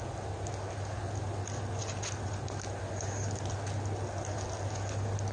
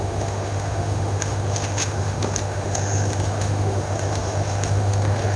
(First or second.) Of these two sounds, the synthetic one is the second